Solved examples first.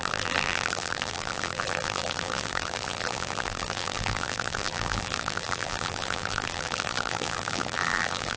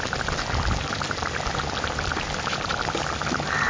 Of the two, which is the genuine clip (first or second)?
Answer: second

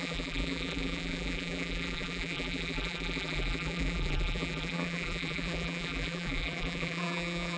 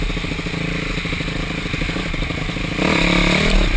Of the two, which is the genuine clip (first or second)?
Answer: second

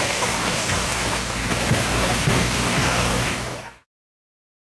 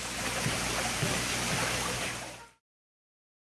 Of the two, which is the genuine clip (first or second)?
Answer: second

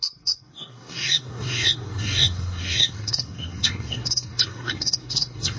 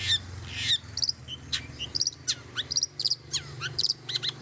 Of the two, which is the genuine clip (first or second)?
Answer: second